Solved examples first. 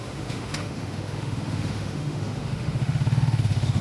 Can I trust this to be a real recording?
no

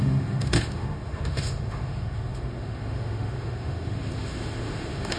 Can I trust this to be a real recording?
no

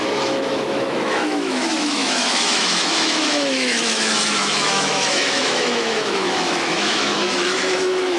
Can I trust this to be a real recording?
no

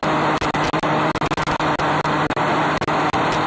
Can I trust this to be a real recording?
yes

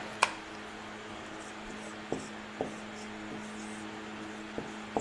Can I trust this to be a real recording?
yes